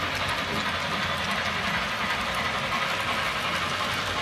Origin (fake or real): real